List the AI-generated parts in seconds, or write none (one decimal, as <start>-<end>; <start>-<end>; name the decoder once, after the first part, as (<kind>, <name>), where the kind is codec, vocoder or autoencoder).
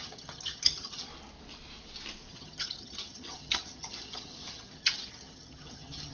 0.0-1.1 (vocoder, HiFi-GAN); 2.3-6.1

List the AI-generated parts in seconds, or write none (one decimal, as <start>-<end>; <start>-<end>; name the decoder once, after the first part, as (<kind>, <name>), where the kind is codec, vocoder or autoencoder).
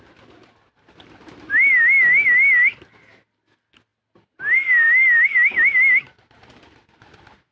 none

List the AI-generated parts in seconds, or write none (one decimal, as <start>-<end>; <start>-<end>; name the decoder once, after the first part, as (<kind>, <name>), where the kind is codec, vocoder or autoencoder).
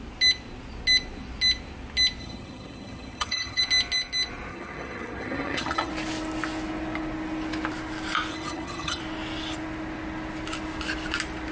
2.2-3.6 (vocoder, HiFi-GAN); 4.5-5.9; 8.3-9.0